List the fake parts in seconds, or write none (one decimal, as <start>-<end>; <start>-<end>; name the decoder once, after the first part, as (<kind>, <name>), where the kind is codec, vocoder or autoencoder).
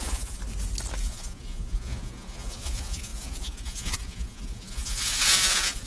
0.0-0.4 (vocoder, Vocos); 1.0-5.9